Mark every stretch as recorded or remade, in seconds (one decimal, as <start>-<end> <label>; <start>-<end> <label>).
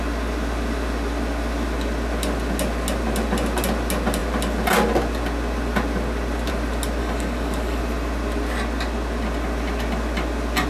0.0-7.0 recorded; 7.0-7.8 remade; 7.8-10.7 recorded